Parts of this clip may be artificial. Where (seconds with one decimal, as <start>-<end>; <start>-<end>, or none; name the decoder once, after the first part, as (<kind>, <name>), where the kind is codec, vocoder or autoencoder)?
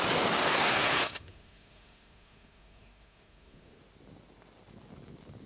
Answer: 0.5-3.8 (codec, SNAC)